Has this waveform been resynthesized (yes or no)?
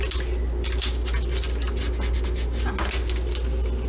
no